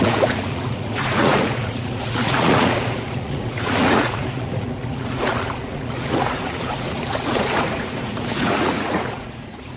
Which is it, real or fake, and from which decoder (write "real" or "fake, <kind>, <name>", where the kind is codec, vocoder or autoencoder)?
fake, vocoder, Vocos